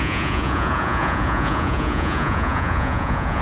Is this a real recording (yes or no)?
no